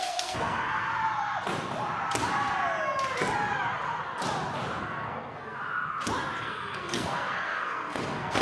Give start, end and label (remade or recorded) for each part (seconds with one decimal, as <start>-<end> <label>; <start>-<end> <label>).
0.0-0.9 remade; 0.9-4.8 recorded; 4.8-5.6 remade; 5.6-6.4 recorded; 6.4-8.4 remade